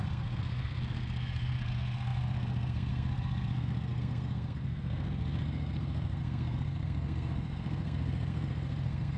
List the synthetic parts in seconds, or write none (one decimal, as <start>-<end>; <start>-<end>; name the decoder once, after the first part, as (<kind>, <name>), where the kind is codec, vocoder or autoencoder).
0.0-9.2 (codec, SNAC)